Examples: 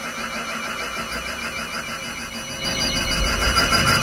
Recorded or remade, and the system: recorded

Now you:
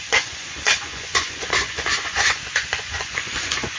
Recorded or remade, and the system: remade, vocoder, Vocos